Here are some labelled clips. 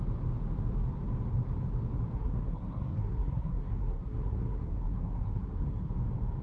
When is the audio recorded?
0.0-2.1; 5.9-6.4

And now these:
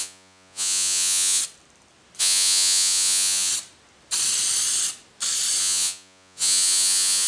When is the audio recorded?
1.4-2.2; 3.5-5.6

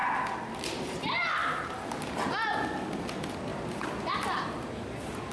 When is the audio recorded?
0.0-5.3